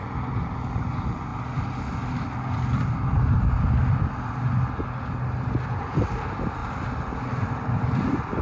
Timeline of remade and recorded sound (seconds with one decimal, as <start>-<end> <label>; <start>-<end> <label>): 0.0-8.4 recorded